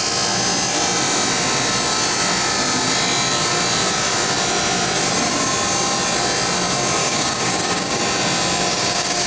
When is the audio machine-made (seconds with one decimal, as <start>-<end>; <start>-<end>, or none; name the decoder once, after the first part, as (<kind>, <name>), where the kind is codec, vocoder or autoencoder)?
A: 7.0-8.0 (codec, DAC); 8.7-9.3

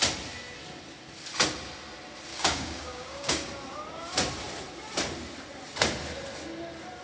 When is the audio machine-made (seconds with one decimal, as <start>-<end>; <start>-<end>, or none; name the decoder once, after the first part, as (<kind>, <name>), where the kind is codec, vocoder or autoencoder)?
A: 2.3-3.5 (codec, DAC)

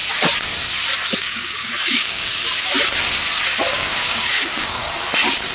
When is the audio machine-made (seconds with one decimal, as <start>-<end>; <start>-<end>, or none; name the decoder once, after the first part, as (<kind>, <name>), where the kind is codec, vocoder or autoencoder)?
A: 1.2-2.3 (codec, DAC); 3.7-4.8

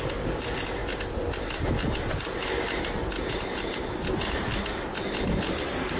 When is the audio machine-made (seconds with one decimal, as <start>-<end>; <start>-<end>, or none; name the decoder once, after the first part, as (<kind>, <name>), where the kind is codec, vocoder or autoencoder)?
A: none

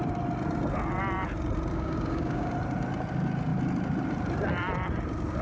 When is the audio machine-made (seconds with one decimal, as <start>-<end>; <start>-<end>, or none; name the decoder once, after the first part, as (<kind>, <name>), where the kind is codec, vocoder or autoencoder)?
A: 1.7-2.5 (codec, DAC)

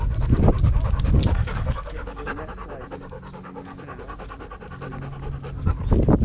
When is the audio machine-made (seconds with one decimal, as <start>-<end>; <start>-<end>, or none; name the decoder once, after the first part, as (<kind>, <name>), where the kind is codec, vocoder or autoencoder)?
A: 1.2-2.3 (codec, DAC)

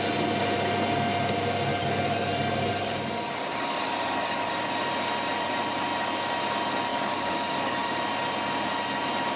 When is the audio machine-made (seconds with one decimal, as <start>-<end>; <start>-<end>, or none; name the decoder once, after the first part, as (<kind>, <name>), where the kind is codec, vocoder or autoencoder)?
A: 1.7-4.5 (codec, DAC); 6.9-7.9